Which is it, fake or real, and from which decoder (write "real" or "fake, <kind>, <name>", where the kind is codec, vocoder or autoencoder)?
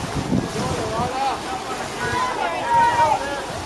real